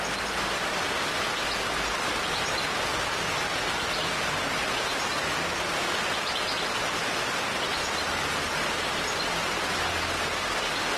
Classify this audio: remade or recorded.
recorded